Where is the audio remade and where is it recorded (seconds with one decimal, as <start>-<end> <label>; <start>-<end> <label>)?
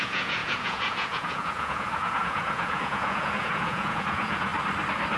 0.0-4.5 remade; 4.5-5.2 recorded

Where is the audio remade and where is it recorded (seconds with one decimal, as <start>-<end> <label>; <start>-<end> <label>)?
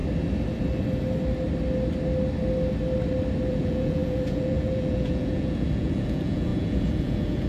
0.0-3.5 recorded; 3.5-7.5 remade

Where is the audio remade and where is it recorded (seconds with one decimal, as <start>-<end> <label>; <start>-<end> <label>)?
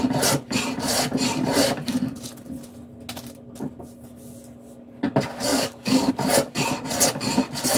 0.0-5.5 recorded; 5.5-6.1 remade; 6.1-7.8 recorded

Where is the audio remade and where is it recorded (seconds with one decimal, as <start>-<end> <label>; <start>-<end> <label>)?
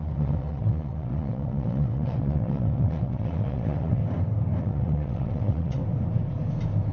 0.0-4.0 remade; 4.0-4.6 recorded; 4.6-5.8 remade; 5.8-6.9 recorded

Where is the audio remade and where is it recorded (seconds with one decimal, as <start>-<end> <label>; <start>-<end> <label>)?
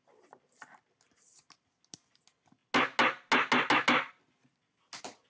0.0-5.3 recorded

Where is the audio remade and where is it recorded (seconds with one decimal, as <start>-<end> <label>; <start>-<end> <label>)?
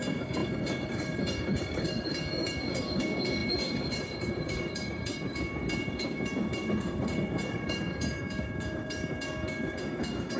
0.0-10.4 remade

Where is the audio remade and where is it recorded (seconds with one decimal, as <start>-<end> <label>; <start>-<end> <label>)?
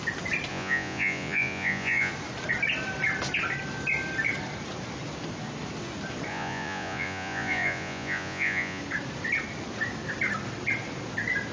0.0-0.5 recorded; 0.5-2.1 remade; 2.1-6.3 recorded; 6.3-8.8 remade; 8.8-11.5 recorded